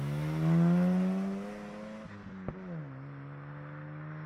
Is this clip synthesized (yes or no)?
no